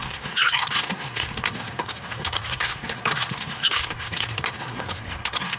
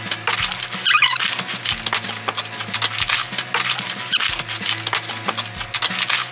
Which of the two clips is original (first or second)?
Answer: second